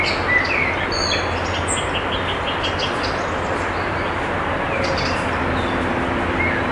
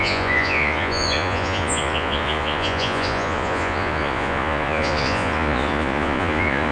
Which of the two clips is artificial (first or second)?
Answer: second